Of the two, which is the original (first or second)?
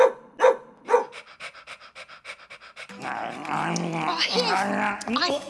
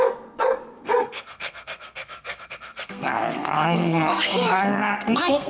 first